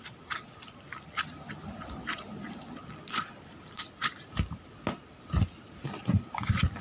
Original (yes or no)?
yes